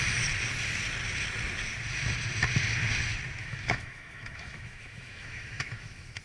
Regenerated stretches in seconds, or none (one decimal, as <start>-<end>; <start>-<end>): 3.4-6.2